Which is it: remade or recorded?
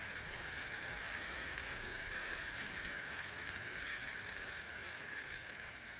remade